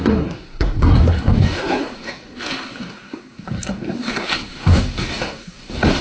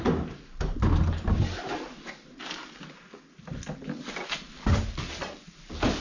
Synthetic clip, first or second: first